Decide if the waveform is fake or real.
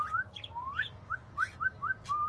real